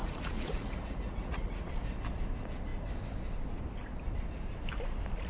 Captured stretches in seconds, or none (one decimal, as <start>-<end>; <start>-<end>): 1.7-5.3